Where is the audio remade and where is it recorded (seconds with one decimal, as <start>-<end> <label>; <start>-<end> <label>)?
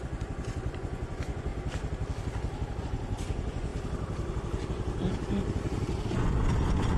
0.0-1.5 remade; 1.5-2.8 recorded; 2.8-3.7 remade; 3.7-6.1 recorded; 6.1-7.0 remade